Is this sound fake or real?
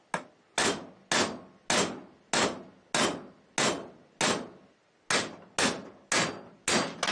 real